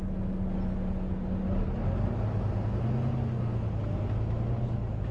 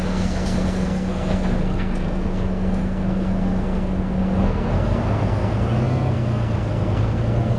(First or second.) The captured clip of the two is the first